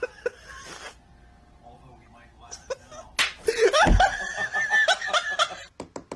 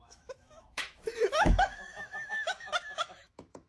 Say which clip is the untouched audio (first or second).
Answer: first